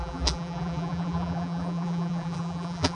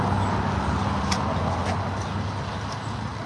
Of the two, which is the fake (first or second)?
first